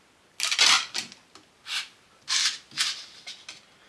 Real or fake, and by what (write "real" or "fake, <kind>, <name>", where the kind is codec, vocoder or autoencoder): real